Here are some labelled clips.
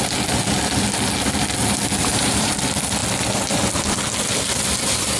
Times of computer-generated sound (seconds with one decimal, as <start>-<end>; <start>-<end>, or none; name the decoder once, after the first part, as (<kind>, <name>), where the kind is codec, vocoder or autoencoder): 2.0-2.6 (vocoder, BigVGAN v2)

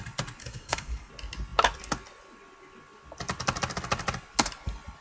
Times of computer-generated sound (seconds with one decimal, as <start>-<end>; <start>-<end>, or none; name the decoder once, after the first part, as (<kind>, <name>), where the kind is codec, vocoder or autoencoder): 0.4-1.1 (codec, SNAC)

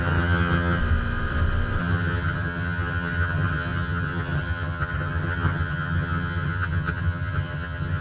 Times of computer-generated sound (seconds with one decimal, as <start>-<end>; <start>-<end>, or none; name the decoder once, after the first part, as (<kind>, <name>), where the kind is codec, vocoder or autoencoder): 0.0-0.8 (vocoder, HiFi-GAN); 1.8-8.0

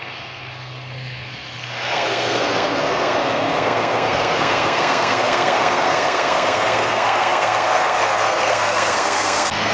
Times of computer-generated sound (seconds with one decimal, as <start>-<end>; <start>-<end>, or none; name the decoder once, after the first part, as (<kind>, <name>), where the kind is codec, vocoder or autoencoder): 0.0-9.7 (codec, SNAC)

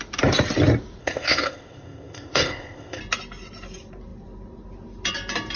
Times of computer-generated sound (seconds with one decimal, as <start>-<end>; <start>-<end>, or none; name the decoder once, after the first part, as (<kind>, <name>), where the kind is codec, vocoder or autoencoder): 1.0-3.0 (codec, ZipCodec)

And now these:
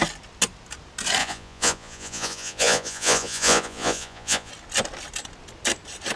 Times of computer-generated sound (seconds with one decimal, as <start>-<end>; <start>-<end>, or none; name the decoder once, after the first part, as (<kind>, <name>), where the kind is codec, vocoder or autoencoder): 1.2-4.5 (vocoder, Vocos)

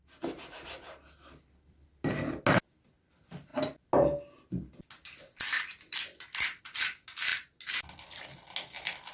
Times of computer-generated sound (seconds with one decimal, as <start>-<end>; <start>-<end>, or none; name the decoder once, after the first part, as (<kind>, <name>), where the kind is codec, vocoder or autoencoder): none